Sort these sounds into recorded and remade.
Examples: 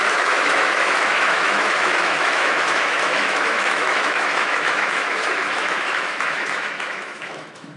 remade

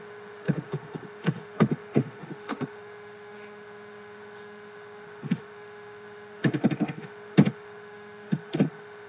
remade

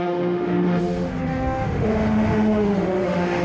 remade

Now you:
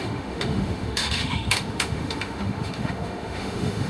remade